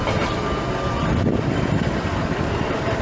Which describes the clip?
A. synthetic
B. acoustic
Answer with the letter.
A